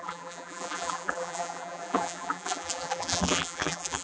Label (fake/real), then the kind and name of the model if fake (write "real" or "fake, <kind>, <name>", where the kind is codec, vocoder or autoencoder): fake, vocoder, BigVGAN v2